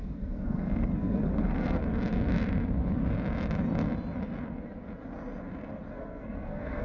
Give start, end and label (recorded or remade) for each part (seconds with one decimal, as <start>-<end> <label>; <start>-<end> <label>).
0.0-1.8 remade; 1.8-5.9 recorded; 5.9-6.8 remade